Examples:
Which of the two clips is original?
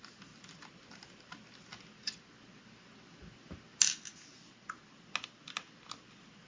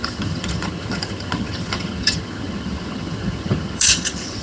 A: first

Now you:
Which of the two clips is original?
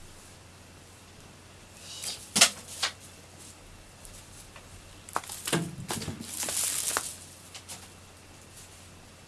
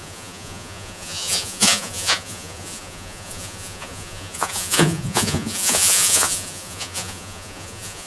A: first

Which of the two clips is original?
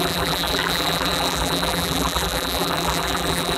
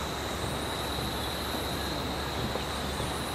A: second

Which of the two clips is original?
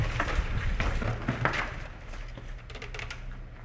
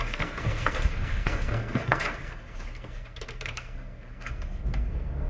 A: first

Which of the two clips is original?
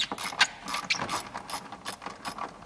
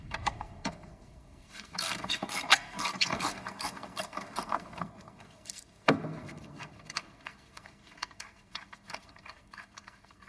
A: first